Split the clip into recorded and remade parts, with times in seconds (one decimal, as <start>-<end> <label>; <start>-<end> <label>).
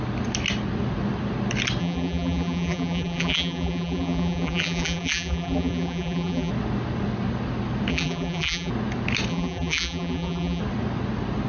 0.0-1.8 recorded; 1.8-6.5 remade; 6.5-7.9 recorded; 7.9-8.7 remade; 8.7-9.3 recorded; 9.3-10.6 remade; 10.6-11.5 recorded